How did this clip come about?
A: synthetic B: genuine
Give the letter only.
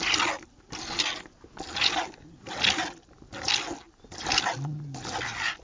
B